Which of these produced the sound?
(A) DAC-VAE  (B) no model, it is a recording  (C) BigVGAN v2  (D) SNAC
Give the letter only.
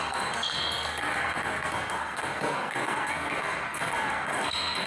D